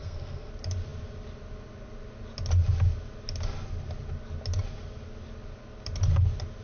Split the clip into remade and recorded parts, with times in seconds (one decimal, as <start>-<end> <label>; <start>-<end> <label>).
0.0-0.5 remade; 0.5-6.6 recorded